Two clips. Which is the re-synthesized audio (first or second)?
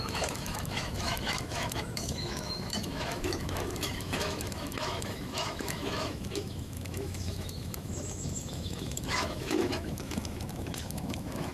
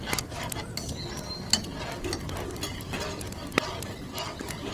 first